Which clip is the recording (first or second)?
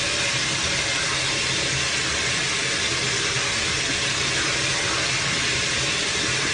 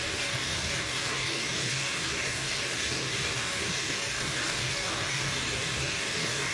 first